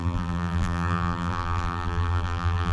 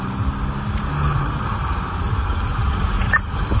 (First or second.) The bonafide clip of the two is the second